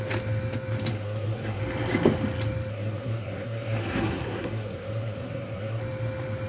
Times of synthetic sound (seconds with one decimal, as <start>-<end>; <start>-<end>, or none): 0.9-1.6; 2.7-5.8